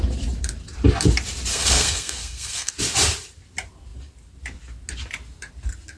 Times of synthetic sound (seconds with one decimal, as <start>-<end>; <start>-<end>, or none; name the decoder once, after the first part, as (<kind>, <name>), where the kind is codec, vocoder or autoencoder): 1.5-2.7 (codec, SNAC)